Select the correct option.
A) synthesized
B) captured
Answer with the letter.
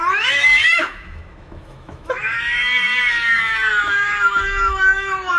A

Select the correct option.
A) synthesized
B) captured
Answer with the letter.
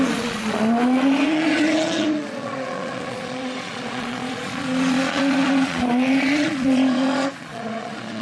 A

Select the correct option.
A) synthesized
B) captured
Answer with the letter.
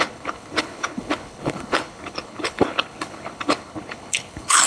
A